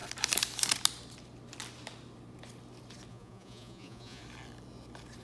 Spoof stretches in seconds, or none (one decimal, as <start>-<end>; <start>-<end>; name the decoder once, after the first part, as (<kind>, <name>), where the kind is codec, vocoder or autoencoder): 3.1-4.2 (vocoder, Vocos)

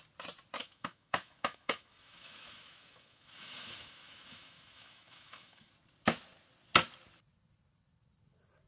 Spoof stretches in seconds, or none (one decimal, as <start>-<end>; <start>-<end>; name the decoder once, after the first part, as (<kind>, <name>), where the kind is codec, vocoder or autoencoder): 0.6-5.7 (autoencoder, DAC-VAE)

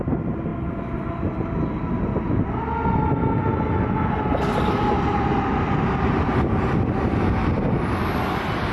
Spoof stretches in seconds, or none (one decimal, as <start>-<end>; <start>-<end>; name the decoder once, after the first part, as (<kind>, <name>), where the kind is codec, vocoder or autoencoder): none

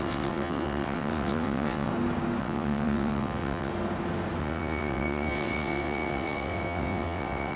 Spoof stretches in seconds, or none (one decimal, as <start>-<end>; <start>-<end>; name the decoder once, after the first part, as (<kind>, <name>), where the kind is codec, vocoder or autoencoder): 0.0-1.9 (vocoder, WaveNeXt); 2.4-3.7; 4.4-7.6

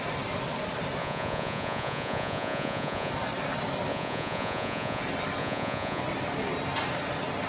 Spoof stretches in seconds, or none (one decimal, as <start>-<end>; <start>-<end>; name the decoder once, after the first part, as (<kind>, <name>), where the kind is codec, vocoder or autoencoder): 1.0-3.1 (vocoder, Vocos); 3.9-5.0; 5.4-6.0

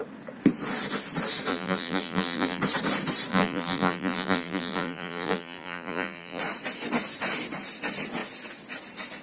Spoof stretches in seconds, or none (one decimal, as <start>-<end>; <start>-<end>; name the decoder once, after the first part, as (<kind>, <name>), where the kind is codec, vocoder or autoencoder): 1.5-2.6 (vocoder, BigVGAN v2); 3.3-6.4

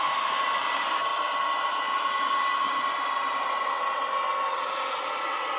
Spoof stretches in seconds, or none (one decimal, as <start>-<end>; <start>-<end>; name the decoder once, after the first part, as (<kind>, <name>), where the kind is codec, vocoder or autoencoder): none